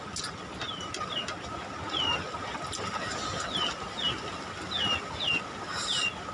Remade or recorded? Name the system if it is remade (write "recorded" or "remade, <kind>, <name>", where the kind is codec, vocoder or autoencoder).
recorded